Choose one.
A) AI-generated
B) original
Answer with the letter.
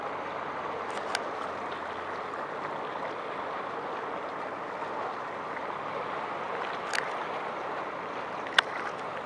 B